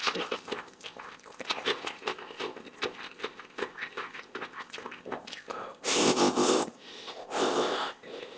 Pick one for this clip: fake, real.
fake